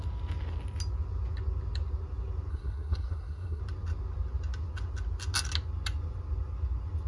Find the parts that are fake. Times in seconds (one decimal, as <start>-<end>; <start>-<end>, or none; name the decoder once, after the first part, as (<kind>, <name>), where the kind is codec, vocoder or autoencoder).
2.5-3.6 (codec, SNAC)